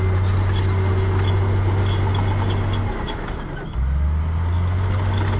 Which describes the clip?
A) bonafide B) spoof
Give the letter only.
A